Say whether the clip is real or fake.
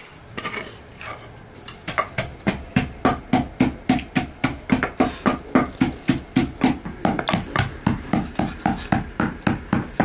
real